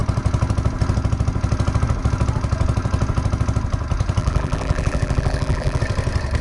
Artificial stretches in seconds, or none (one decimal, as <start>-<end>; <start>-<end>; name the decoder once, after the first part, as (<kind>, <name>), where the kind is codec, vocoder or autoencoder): 4.2-5.8 (vocoder, BigVGAN v2)